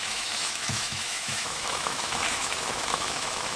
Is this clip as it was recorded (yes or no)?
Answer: no